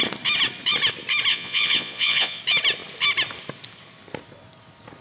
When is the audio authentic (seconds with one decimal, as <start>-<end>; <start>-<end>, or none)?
0.0-1.3; 2.4-5.0

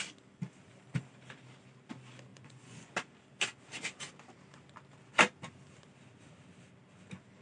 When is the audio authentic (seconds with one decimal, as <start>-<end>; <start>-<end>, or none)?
0.0-2.3; 2.9-7.4